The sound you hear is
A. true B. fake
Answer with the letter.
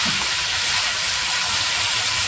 B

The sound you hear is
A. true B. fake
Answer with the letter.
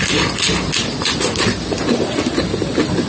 A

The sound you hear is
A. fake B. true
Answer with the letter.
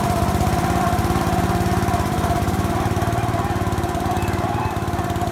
A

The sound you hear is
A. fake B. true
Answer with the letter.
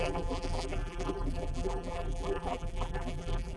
A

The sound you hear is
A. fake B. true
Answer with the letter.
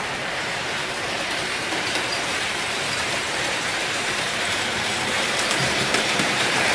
A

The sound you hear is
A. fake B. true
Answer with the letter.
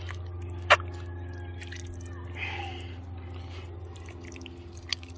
B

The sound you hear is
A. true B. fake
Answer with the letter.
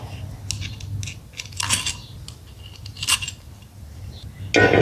A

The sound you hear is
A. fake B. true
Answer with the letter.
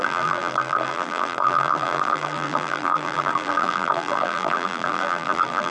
A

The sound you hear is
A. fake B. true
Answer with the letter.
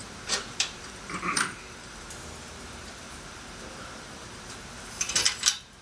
A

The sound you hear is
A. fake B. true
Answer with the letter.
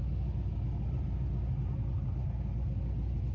B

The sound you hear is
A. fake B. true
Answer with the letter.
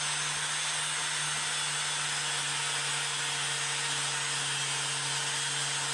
B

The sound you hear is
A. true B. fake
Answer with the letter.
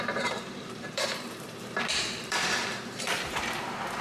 B